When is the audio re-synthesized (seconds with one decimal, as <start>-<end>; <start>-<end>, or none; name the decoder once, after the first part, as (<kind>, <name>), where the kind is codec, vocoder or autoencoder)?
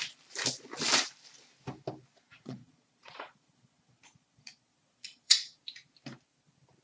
2.1-5.6 (vocoder, Vocos)